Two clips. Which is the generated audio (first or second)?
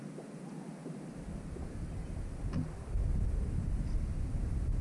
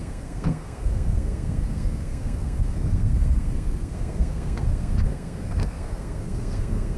second